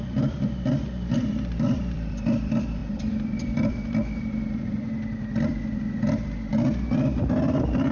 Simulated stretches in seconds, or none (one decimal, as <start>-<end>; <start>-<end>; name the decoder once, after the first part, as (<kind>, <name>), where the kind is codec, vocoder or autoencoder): 0.0-6.5 (vocoder, BigVGAN v2); 7.5-7.9